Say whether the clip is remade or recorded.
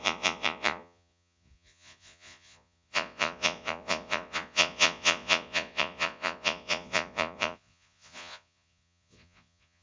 remade